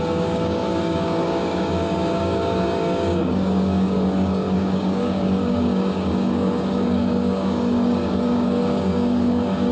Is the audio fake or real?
fake